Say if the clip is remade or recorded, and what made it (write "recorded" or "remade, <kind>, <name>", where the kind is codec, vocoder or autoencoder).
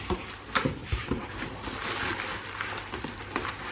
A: recorded